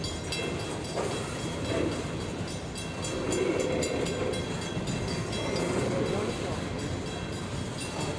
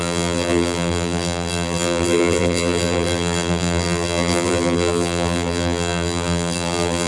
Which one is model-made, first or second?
second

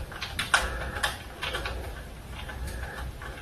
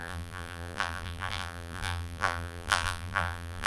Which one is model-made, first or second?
second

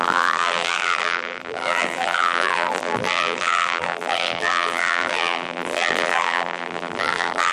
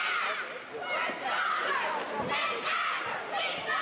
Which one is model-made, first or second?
first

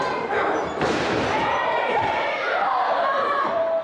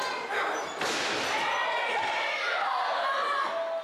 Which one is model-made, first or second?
first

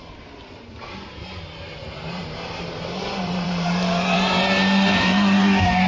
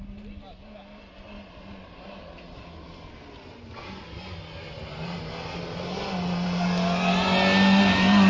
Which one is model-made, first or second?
first